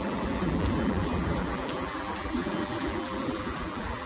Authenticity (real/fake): fake